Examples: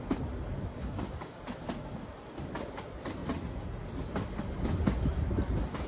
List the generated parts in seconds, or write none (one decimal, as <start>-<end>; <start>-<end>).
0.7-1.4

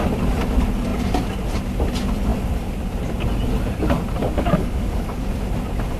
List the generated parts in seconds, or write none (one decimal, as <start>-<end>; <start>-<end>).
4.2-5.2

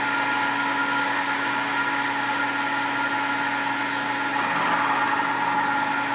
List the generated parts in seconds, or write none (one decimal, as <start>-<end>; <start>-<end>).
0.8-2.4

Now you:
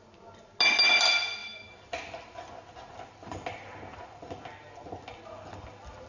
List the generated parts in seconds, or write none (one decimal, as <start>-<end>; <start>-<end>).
none

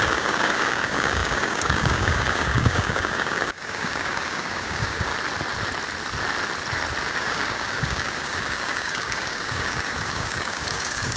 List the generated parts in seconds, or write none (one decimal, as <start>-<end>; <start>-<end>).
0.0-5.1; 7.1-11.2

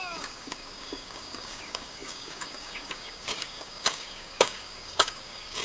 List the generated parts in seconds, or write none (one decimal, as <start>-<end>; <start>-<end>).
0.0-5.6